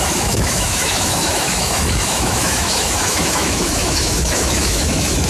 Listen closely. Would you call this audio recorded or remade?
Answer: remade